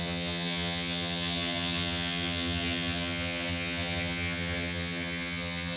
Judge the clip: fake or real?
fake